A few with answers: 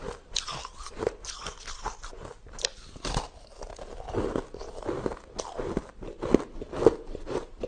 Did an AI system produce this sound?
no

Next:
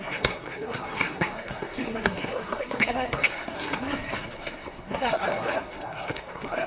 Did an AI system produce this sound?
yes